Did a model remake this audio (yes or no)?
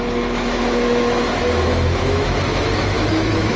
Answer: yes